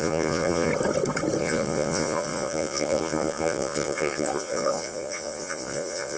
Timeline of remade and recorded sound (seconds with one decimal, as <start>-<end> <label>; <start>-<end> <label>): 0.0-0.7 remade; 0.7-1.4 recorded; 1.4-6.2 remade